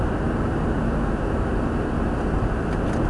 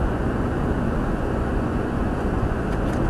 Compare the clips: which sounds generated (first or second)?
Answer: second